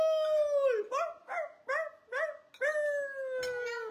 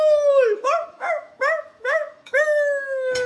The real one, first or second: first